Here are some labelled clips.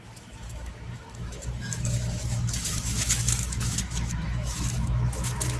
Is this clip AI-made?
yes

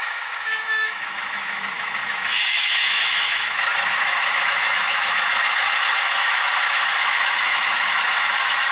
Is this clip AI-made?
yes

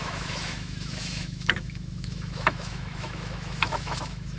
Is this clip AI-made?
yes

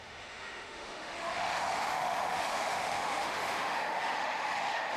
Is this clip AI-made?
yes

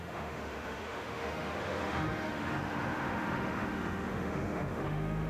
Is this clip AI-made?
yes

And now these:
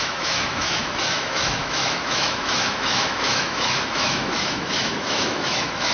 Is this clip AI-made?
yes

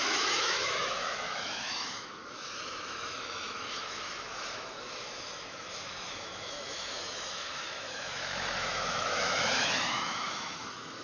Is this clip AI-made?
yes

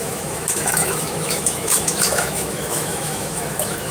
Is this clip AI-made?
yes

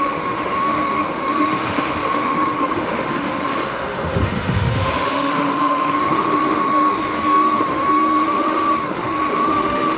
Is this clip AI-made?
yes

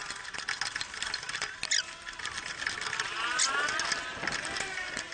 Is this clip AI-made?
no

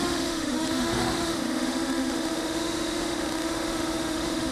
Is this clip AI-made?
yes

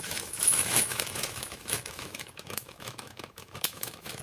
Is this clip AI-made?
yes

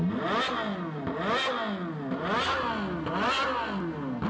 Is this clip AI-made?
no